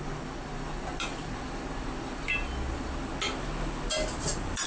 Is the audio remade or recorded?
recorded